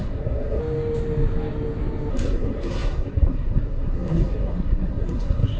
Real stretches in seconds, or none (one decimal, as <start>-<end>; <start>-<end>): 0.6-2.1